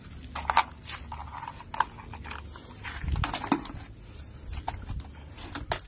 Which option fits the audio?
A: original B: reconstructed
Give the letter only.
A